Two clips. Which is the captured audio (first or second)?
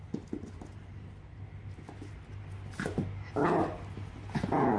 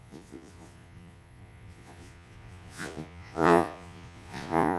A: first